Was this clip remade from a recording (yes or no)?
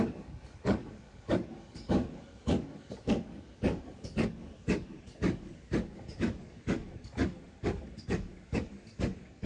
yes